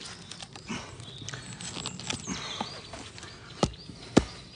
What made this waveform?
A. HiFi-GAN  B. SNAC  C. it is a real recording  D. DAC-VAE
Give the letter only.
C